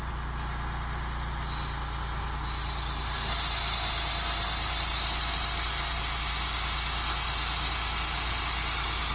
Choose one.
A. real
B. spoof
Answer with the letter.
A